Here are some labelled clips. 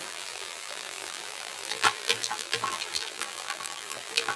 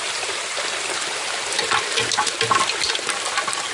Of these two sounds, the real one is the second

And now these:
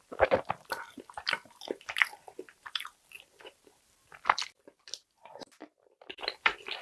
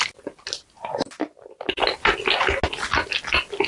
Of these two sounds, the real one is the second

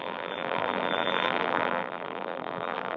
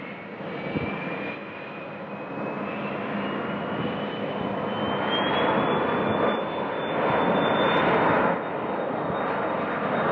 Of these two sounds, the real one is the second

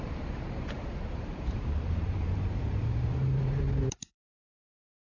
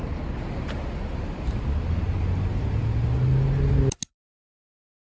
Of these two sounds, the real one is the second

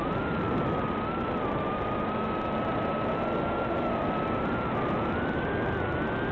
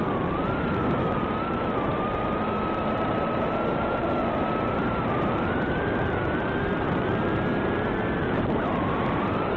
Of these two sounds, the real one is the first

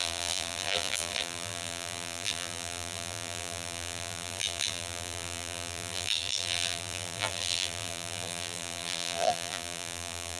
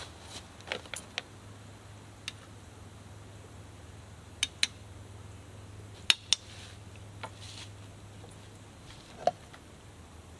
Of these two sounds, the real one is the second